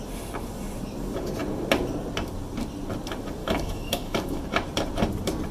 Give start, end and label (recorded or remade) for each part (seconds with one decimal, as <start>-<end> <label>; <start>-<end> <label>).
0.0-3.4 recorded; 3.4-4.4 remade; 4.4-5.5 recorded